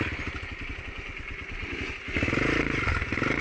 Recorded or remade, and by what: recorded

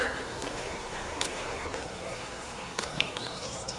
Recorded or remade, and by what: remade, codec, SNAC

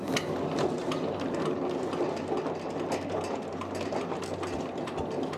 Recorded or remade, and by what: recorded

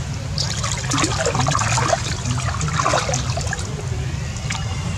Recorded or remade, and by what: recorded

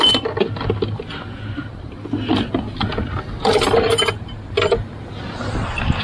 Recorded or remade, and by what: recorded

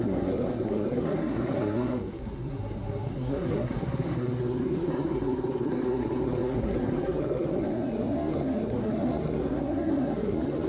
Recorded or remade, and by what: remade, codec, SNAC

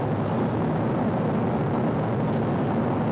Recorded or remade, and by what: recorded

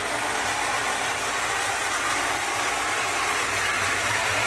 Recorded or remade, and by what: recorded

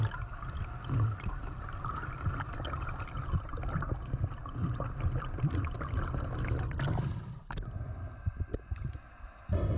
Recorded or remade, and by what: recorded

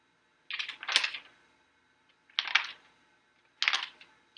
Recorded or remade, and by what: recorded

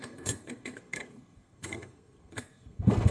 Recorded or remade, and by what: remade, codec, SNAC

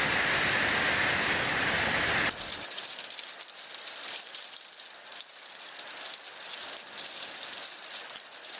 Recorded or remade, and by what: recorded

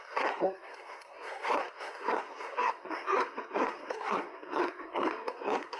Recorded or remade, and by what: remade, codec, SNAC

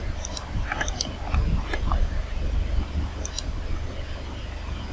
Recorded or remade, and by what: recorded